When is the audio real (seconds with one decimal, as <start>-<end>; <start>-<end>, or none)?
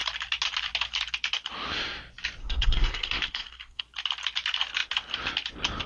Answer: 0.0-2.4; 3.8-5.9